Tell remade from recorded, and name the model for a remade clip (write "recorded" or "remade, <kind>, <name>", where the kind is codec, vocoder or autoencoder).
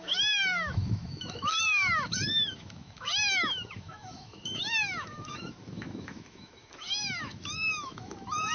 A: remade, autoencoder, DAC-VAE